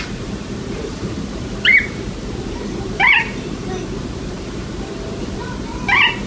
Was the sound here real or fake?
fake